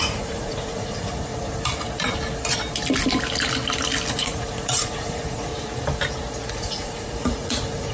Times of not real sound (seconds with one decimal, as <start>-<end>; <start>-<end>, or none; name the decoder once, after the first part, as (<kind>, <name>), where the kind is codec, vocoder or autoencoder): 0.0-1.3 (vocoder, Vocos); 4.1-5.5; 6.5-7.9